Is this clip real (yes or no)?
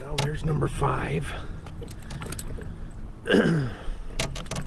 yes